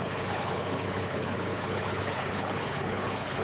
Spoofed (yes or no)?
yes